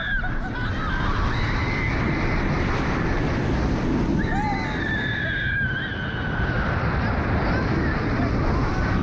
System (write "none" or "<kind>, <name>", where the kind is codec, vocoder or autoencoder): none